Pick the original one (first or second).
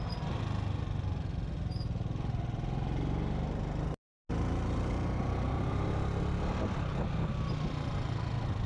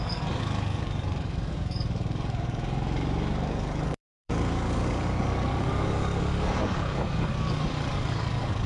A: first